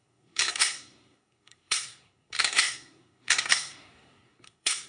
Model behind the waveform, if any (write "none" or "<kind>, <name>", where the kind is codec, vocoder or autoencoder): codec, SNAC